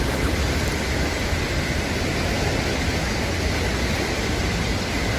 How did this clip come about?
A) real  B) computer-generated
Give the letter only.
A